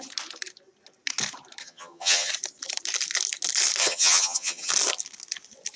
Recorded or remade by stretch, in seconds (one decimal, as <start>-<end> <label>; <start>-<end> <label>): 0.0-1.6 recorded; 1.6-2.3 remade; 2.3-3.8 recorded; 3.8-4.7 remade; 4.7-5.8 recorded